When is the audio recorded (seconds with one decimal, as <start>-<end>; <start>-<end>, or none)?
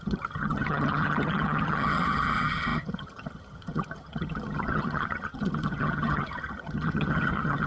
none